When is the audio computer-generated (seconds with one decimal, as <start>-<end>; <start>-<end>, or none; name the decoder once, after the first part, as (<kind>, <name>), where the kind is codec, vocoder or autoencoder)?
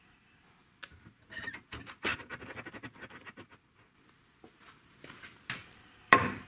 5.6-6.5 (vocoder, BigVGAN v2)